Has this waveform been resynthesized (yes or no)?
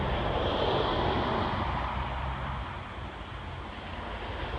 no